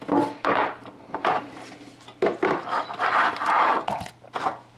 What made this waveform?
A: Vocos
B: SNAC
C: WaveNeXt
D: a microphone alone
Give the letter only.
D